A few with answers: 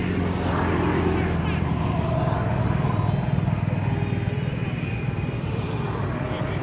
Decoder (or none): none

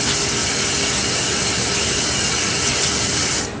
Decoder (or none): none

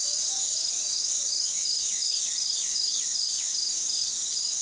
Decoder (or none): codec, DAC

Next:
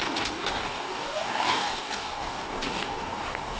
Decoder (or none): codec, DAC